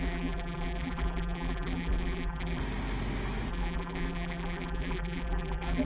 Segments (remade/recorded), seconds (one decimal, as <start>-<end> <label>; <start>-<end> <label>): 0.0-2.6 remade; 2.6-3.5 recorded; 3.5-5.8 remade